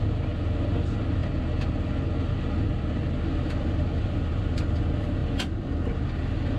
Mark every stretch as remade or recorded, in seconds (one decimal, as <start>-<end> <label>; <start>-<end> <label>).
0.0-6.6 recorded